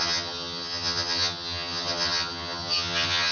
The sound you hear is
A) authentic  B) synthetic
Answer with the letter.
B